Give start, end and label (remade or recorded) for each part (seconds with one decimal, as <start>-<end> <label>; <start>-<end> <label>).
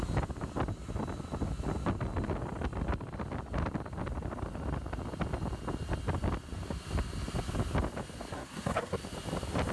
0.0-8.3 recorded; 8.3-9.0 remade; 9.0-9.7 recorded